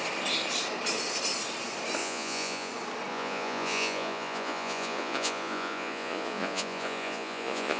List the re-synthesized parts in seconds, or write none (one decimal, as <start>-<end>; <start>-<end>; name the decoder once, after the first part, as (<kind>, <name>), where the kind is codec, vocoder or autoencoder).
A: 2.0-2.7 (vocoder, Vocos); 3.1-7.8